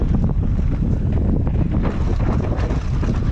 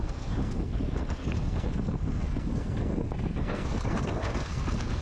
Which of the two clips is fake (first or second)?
second